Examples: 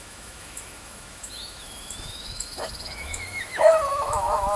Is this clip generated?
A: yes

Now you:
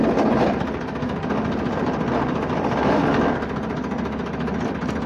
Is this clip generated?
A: no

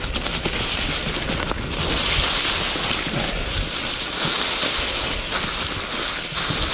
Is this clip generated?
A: no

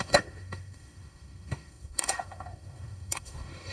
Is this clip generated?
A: yes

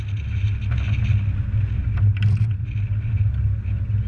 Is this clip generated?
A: no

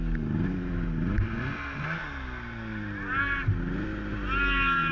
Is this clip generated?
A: no